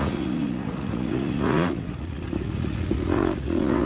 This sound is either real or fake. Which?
fake